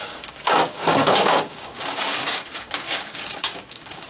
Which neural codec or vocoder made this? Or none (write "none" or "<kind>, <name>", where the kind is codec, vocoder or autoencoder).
codec, DAC